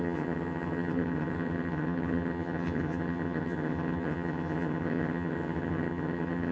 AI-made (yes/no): yes